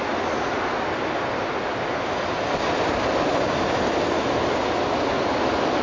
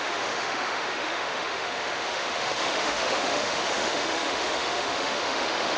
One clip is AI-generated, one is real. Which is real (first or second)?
first